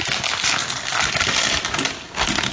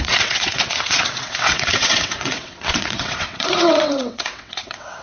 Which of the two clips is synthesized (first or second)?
second